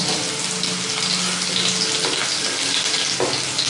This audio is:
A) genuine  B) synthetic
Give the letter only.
A